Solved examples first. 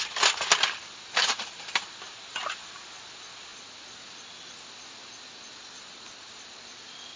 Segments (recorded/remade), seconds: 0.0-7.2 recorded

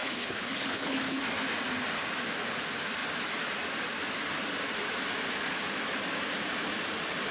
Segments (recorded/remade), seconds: 0.0-1.2 remade; 1.2-7.3 recorded

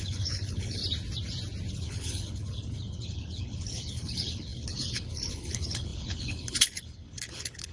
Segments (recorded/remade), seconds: 0.0-0.8 remade; 0.8-1.7 recorded; 1.7-7.7 remade

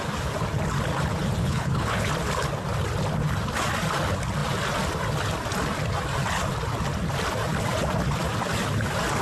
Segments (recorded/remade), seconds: 0.0-1.4 recorded; 1.4-2.1 remade; 2.1-9.2 recorded

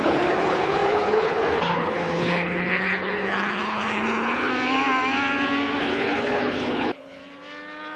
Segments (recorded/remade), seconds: 0.0-4.5 remade; 4.5-5.8 recorded; 5.8-7.2 remade; 7.2-8.0 recorded